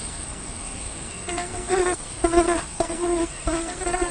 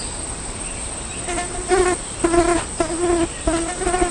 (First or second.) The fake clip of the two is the first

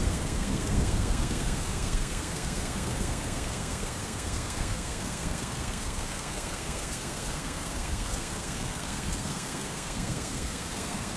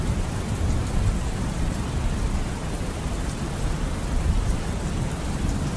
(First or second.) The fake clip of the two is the first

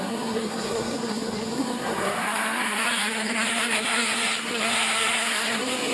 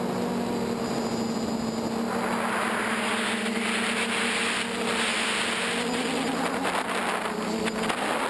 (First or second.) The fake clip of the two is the first